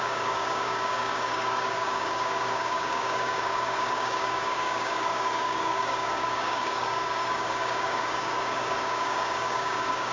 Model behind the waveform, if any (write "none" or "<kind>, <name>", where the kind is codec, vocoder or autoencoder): codec, DAC